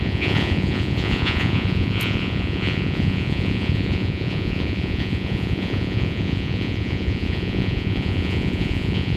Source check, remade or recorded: remade